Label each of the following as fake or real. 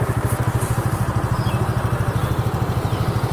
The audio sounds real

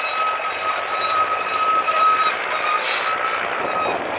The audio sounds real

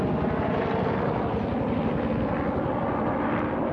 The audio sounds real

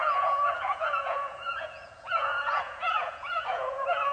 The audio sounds fake